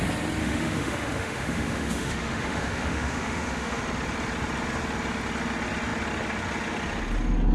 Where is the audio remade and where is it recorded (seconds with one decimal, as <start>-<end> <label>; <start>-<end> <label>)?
0.0-0.4 recorded; 0.4-3.8 remade; 3.8-7.5 recorded